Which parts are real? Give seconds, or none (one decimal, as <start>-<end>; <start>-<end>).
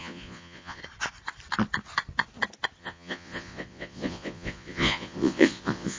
0.8-2.8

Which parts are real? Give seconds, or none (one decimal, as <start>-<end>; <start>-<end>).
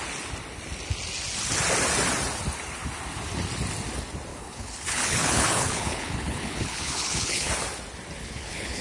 0.0-4.3; 7.5-8.2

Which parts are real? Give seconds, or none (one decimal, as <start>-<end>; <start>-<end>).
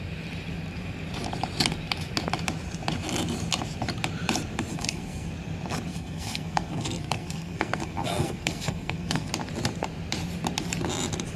0.0-4.7; 5.3-5.9; 9.3-11.4